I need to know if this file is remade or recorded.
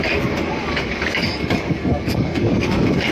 remade